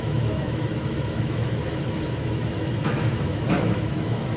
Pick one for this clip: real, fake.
fake